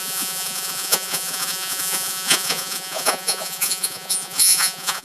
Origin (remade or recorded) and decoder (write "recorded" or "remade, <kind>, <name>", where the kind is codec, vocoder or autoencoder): remade, vocoder, Vocos